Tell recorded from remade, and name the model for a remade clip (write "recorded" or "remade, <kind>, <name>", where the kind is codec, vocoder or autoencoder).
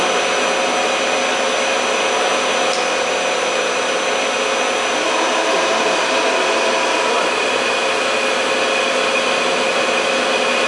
recorded